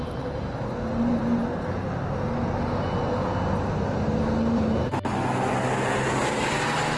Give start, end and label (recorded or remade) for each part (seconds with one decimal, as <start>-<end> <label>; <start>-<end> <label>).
0.0-7.0 recorded